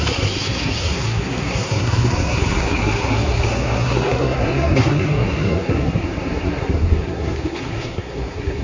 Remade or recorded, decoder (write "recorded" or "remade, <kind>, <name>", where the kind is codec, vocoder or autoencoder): remade, codec, SNAC